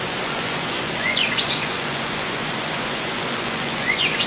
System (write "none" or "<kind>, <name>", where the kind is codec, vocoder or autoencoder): vocoder, Vocos